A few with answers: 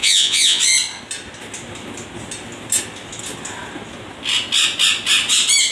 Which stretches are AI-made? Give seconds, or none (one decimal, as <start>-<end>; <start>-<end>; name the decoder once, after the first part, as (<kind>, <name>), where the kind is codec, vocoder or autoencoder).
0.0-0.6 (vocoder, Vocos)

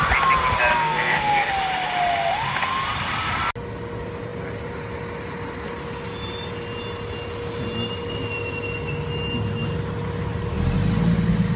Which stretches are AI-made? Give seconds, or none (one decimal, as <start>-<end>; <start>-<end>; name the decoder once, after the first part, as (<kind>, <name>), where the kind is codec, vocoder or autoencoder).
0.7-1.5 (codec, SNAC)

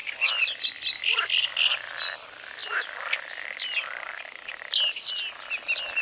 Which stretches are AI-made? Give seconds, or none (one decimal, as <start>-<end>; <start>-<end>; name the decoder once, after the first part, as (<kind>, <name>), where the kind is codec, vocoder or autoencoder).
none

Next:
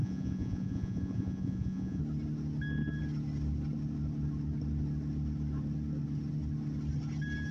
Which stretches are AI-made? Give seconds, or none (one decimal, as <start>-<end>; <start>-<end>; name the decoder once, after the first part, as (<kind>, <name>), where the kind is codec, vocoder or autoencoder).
0.0-2.0 (vocoder, Vocos)